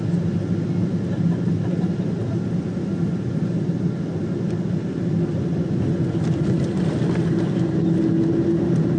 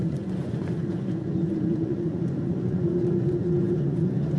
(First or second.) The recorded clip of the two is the first